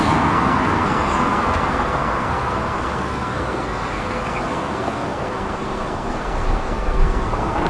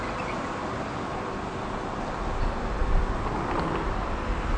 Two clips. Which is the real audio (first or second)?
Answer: second